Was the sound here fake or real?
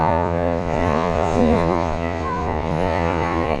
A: fake